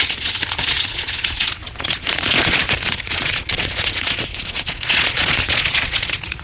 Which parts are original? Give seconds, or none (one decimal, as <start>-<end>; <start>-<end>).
none